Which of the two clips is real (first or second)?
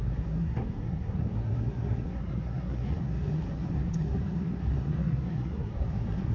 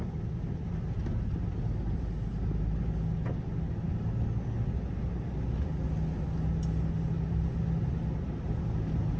second